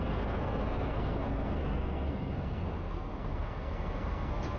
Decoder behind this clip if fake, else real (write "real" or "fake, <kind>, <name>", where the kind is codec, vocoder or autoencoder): fake, codec, SNAC